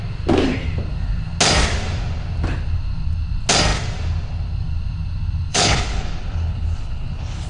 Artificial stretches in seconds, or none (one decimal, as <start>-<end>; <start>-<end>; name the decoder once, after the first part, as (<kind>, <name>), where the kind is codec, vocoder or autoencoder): 5.5-7.5 (codec, HILCodec)